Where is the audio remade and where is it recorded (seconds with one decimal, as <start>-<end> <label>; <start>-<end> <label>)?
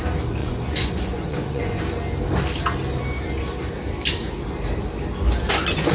0.0-0.4 recorded; 0.4-1.8 remade; 1.8-5.9 recorded